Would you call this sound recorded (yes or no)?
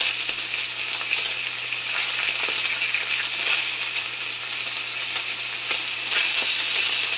yes